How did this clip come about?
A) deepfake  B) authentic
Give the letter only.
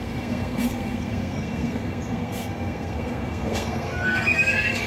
A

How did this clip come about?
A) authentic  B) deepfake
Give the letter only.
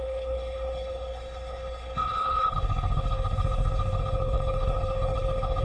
B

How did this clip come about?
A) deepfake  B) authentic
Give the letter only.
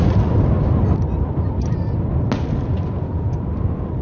B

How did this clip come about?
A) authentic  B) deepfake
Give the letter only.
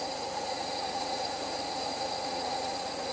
B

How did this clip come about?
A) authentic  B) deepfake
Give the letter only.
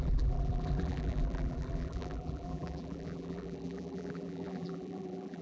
B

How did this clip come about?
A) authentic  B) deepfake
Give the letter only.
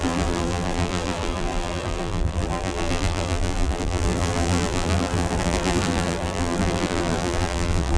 B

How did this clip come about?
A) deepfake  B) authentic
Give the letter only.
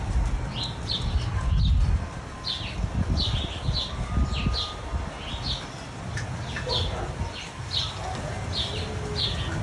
B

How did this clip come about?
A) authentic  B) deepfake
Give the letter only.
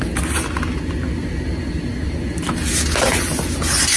A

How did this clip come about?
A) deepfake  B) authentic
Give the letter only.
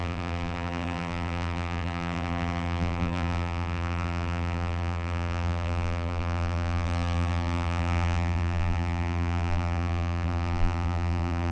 A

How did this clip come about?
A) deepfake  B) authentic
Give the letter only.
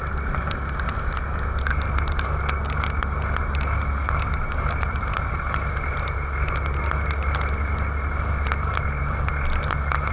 B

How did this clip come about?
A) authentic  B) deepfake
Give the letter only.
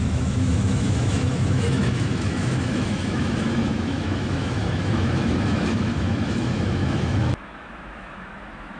B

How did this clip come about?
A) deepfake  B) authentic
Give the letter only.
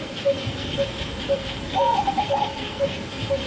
A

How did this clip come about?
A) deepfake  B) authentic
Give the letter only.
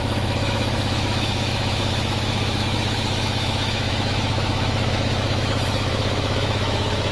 A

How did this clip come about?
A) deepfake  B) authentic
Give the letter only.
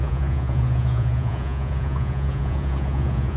A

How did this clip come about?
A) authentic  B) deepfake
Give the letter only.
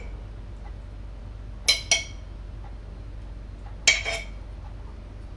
A